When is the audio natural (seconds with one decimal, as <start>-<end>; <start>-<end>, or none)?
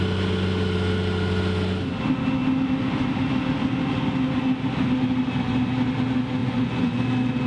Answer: 0.0-6.4; 7.0-7.5